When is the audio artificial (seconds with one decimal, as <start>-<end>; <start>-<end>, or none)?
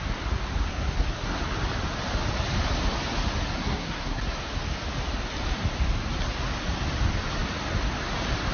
0.7-1.4; 3.6-4.2